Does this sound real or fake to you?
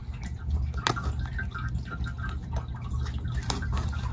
real